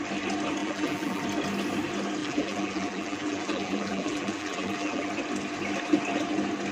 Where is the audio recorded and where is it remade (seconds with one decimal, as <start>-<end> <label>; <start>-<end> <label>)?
0.0-0.6 recorded; 0.6-1.2 remade; 1.2-2.2 recorded; 2.2-5.1 remade; 5.1-6.7 recorded